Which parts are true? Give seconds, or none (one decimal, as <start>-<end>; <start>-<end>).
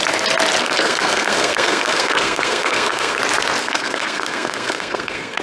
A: 0.0-0.6; 3.2-3.6